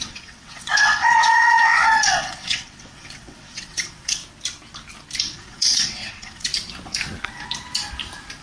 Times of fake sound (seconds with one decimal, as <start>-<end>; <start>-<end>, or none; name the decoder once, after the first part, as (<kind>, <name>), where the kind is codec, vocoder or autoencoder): 0.0-4.2 (vocoder, WaveNeXt); 5.2-6.5